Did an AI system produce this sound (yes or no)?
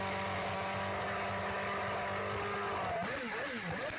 no